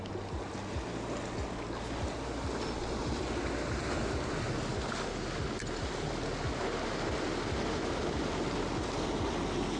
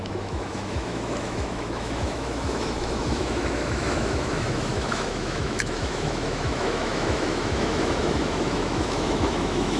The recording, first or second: first